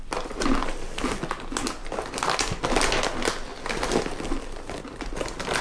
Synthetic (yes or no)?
no